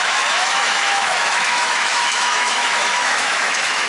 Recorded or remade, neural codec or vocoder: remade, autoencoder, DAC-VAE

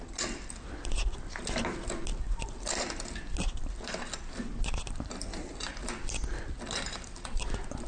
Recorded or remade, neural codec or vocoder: recorded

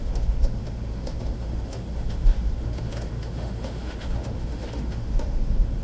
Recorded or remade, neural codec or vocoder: remade, autoencoder, DAC-VAE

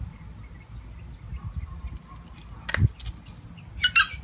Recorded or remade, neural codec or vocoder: recorded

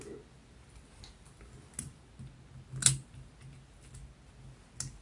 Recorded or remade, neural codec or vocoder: recorded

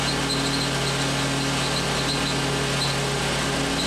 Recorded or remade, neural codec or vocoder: recorded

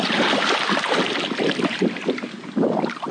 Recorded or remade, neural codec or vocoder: recorded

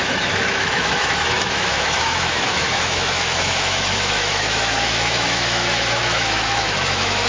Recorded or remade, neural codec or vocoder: remade, autoencoder, DAC-VAE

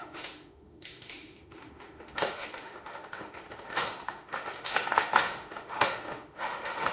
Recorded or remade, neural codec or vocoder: remade, autoencoder, DAC-VAE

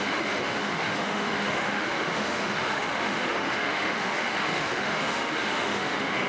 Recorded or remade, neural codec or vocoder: remade, autoencoder, DAC-VAE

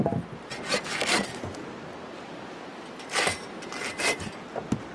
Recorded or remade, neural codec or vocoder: recorded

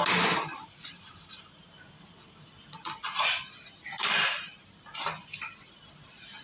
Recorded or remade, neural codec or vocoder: recorded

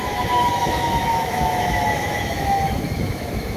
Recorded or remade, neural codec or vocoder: remade, autoencoder, DAC-VAE